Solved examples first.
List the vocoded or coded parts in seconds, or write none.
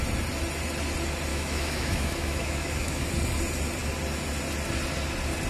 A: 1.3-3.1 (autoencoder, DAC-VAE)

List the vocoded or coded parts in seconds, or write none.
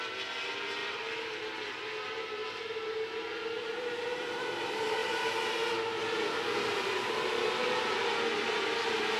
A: 0.8-2.6 (vocoder, BigVGAN v2); 5.0-5.7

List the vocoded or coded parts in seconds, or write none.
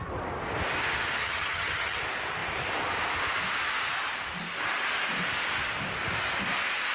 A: 1.2-2.0 (vocoder, HiFi-GAN)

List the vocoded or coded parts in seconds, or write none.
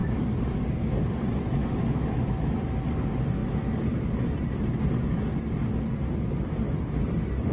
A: 1.6-2.6 (autoencoder, DAC-VAE)